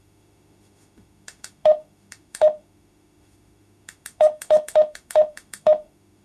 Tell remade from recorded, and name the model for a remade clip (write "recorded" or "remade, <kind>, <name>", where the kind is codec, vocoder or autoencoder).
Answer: remade, autoencoder, DAC-VAE